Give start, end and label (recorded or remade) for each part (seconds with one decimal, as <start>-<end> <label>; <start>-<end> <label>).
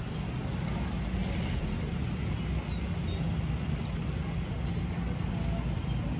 0.0-6.2 recorded